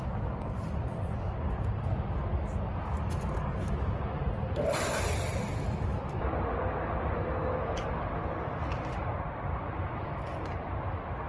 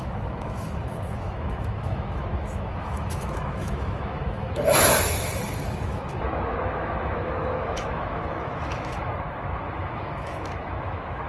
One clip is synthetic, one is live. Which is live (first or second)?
first